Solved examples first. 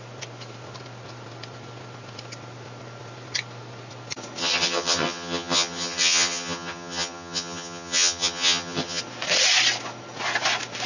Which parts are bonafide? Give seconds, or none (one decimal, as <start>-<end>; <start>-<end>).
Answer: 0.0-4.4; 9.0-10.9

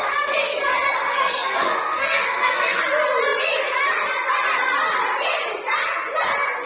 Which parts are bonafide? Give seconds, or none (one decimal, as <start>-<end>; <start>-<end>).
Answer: 0.0-1.1; 2.8-6.7

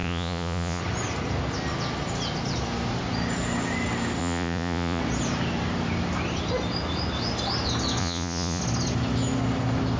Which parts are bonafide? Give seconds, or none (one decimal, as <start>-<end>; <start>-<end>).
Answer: 0.8-4.2; 5.0-8.0; 8.6-10.0